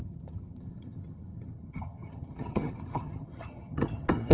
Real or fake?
fake